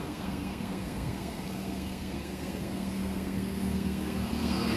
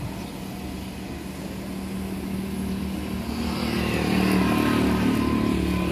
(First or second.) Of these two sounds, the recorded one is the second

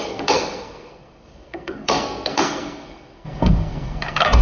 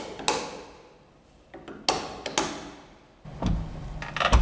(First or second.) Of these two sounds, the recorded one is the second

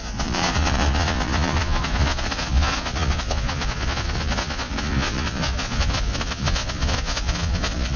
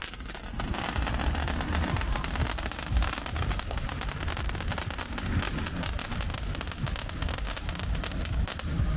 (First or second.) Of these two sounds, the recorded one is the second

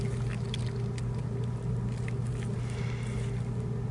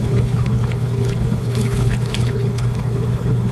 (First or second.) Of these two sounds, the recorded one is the first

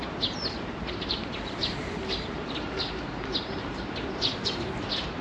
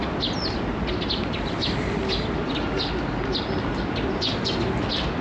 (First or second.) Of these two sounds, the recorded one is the second